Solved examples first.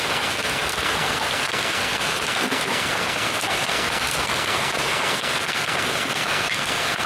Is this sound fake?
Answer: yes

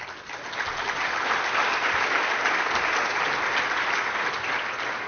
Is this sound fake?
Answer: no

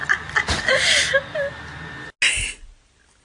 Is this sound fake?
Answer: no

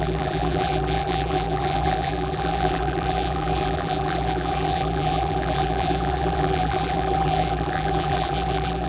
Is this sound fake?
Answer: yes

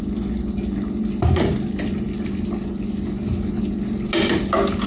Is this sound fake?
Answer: no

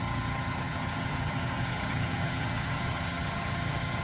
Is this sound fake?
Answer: yes